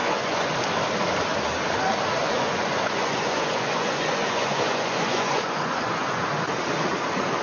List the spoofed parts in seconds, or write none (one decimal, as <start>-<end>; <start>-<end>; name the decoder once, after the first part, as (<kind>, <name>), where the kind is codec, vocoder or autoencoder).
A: 0.0-0.5 (vocoder, Vocos); 2.2-6.2